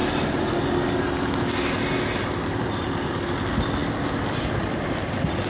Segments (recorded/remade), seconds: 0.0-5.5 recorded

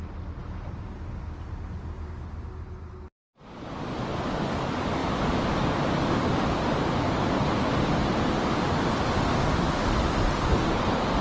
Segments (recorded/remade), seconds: 0.0-11.2 recorded

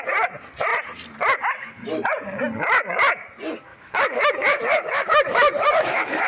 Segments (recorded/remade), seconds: 0.0-3.7 recorded; 3.7-6.3 remade

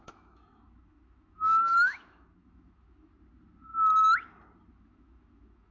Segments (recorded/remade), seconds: 0.0-3.1 remade; 3.1-4.7 recorded; 4.7-5.7 remade

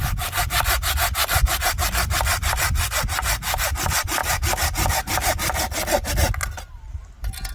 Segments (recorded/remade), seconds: 0.0-7.5 recorded